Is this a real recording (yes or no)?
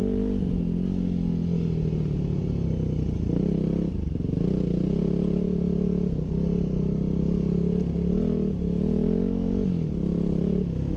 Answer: yes